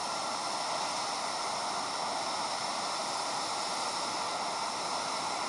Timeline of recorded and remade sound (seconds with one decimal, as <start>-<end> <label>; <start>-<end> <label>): 0.0-5.5 recorded

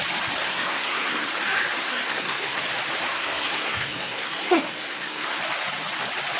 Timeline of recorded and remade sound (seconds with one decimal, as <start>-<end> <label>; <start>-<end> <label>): 0.0-0.4 recorded; 0.4-1.3 remade; 1.3-1.8 recorded; 1.8-2.6 remade; 2.6-3.1 recorded; 3.1-5.4 remade; 5.4-6.4 recorded

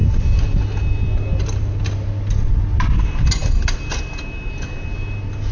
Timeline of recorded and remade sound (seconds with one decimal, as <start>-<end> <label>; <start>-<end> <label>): 0.0-5.5 recorded

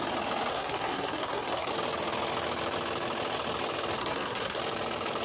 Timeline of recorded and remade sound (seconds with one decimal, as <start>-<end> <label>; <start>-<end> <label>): 0.0-0.5 recorded; 0.5-1.7 remade; 1.7-4.0 recorded; 4.0-4.6 remade; 4.6-5.2 recorded

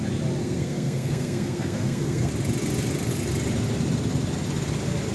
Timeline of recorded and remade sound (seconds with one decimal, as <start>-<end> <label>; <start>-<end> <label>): 0.0-0.4 recorded; 0.4-2.3 remade; 2.3-5.1 recorded

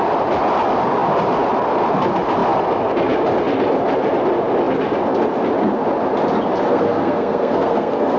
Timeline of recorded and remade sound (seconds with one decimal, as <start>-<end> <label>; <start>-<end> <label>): 0.0-6.7 recorded; 6.7-8.2 remade